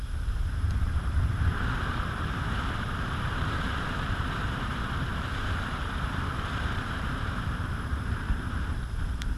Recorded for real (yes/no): no